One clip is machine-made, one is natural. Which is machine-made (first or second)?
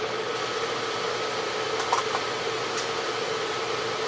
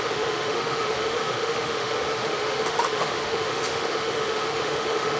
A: second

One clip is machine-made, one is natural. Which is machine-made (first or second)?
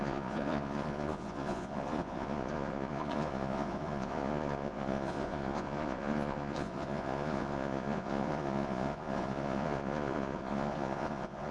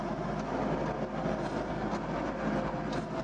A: first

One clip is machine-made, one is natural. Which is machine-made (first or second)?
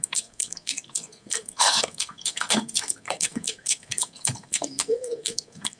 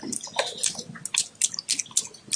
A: first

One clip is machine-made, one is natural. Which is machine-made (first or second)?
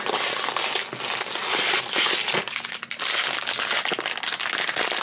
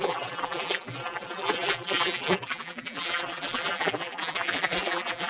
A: second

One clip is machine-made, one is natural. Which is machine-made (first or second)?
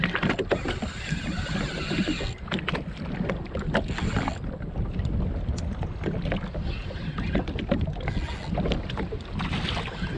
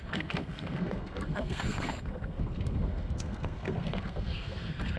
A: second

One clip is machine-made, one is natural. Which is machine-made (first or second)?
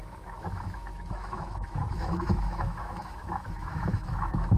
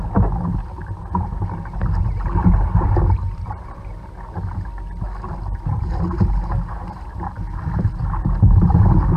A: first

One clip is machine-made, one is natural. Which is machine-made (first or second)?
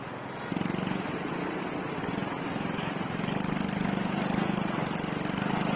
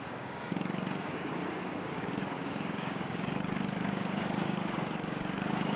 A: second